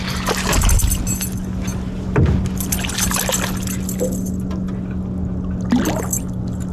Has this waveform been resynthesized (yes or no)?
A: no